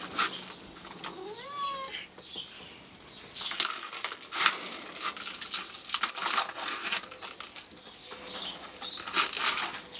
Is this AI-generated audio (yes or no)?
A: no